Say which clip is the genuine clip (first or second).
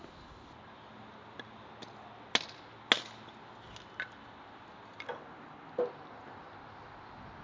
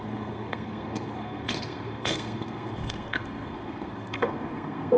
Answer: first